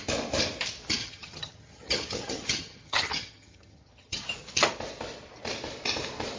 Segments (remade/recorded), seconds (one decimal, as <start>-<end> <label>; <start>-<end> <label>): 0.0-1.0 recorded; 1.0-4.3 remade; 4.3-6.4 recorded